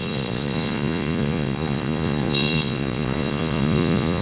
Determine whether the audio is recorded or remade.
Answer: remade